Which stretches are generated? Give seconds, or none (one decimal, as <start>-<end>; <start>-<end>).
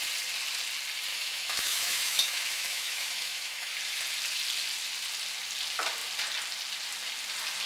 1.1-3.7